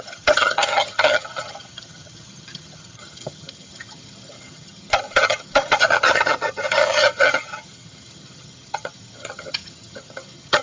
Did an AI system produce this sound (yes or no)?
yes